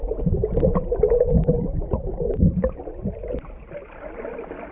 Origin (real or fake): real